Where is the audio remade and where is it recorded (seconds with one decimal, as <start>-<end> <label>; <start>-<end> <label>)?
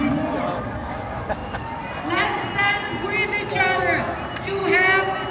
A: 0.0-5.3 recorded